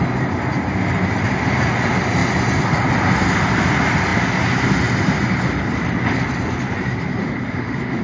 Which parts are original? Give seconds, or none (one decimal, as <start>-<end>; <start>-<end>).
0.0-7.2